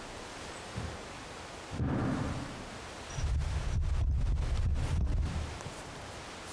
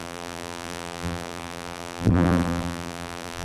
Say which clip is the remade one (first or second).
second